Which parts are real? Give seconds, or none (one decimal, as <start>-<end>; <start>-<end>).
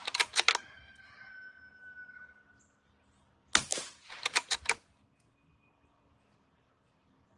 0.0-7.4